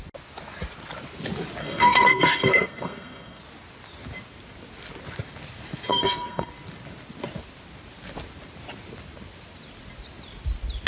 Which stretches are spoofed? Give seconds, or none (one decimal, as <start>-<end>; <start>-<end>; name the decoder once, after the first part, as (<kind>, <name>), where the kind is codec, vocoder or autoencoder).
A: 1.6-3.4 (codec, SNAC); 5.9-6.5